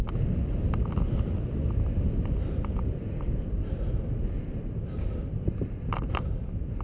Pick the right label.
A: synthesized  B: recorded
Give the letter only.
B